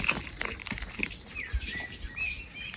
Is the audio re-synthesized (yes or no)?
no